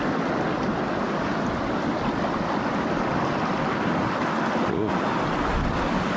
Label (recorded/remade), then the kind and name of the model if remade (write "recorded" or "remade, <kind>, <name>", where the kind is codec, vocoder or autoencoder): recorded